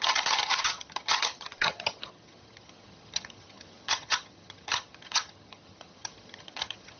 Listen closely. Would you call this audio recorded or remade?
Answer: remade